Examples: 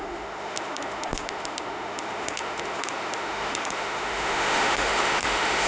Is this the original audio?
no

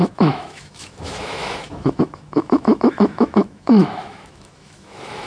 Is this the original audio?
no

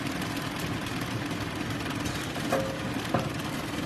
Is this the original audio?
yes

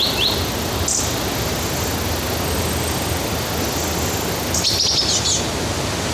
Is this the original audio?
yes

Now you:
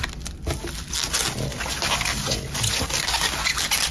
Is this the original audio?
yes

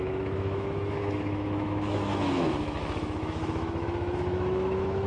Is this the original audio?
no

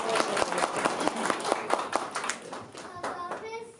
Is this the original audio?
yes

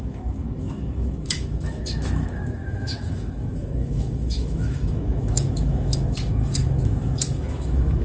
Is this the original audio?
no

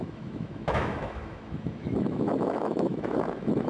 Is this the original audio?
no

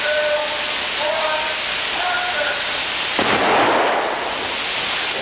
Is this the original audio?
yes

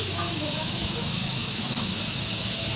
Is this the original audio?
no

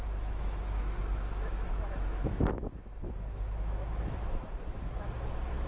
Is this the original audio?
no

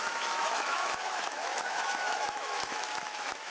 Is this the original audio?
no